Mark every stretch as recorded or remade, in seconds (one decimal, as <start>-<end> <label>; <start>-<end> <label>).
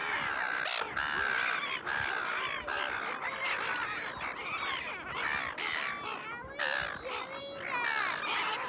0.0-8.7 recorded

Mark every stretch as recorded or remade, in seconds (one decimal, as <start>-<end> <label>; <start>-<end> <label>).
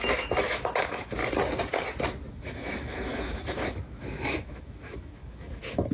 0.0-1.2 remade; 1.2-2.3 recorded; 2.3-5.9 remade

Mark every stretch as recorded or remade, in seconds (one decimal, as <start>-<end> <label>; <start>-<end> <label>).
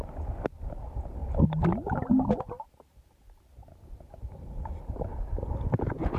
0.0-6.2 recorded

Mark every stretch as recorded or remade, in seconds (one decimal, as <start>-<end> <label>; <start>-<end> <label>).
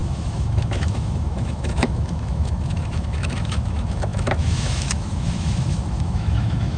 0.0-6.8 remade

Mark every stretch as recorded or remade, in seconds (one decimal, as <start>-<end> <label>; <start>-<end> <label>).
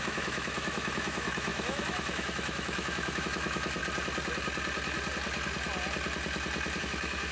0.0-3.8 remade; 3.8-6.8 recorded; 6.8-7.3 remade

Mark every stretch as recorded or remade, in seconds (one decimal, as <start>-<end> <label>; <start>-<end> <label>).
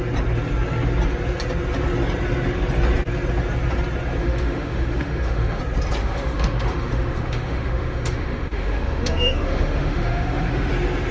0.0-4.2 recorded; 4.2-5.6 remade; 5.6-6.0 recorded; 6.0-10.7 remade; 10.7-11.1 recorded